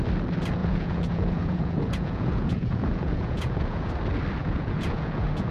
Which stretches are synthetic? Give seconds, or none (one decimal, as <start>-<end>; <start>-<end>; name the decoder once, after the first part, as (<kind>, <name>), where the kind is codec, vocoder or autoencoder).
0.6-3.9 (vocoder, Vocos); 4.4-5.5